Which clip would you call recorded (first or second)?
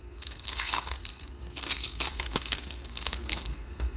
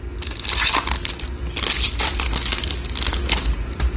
second